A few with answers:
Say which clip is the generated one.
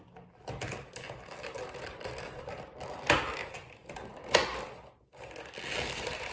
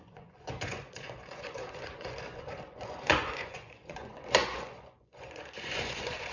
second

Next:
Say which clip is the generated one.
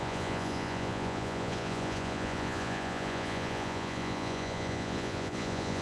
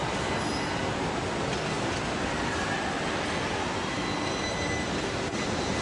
first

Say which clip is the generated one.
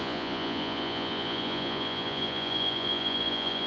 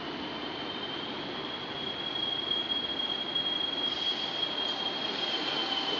first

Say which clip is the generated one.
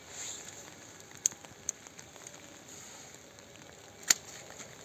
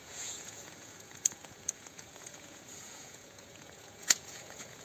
second